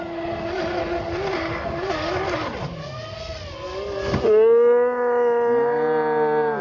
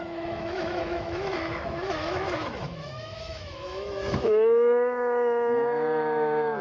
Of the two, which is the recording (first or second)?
first